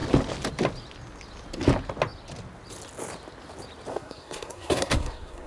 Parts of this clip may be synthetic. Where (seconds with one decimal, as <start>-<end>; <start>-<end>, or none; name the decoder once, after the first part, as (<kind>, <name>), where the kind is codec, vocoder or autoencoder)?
3.9-5.5 (codec, SNAC)